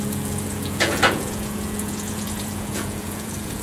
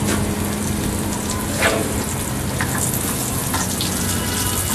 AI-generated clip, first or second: first